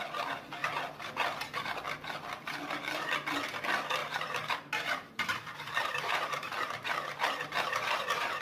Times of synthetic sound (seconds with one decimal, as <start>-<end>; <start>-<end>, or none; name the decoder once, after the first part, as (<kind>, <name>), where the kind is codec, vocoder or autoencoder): 4.0-8.4 (vocoder, BigVGAN v2)